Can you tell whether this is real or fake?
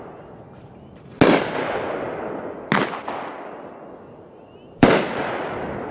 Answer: real